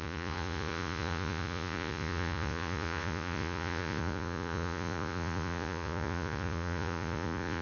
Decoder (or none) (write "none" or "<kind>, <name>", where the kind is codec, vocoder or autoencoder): vocoder, Vocos